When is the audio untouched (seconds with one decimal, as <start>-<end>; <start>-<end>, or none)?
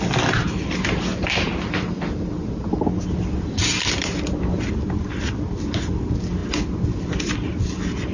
0.0-8.1